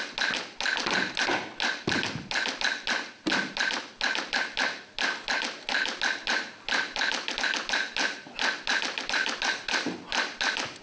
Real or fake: real